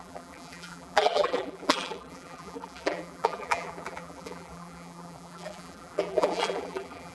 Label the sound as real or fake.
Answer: fake